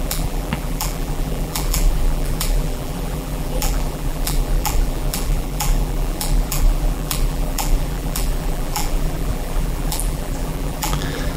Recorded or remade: remade